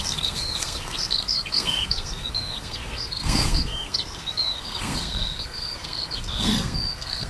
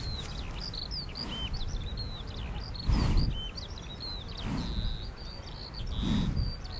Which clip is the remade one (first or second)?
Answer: first